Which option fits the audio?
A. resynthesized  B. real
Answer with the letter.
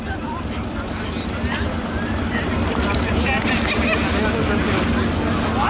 B